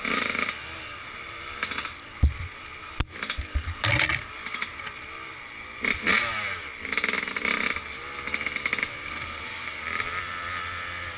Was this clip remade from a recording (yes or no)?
no